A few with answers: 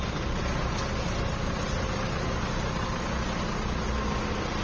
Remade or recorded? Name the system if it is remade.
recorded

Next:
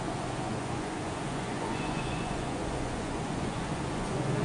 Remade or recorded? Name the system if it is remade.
remade, vocoder, Vocos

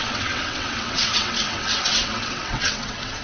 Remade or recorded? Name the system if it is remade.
remade, vocoder, WaveNeXt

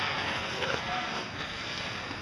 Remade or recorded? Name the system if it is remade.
remade, codec, SNAC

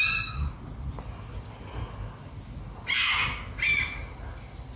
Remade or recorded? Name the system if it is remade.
recorded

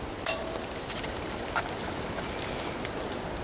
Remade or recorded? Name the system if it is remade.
recorded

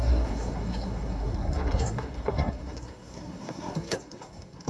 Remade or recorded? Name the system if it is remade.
remade, codec, SNAC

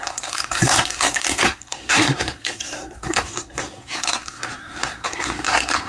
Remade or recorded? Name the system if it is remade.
remade, codec, SNAC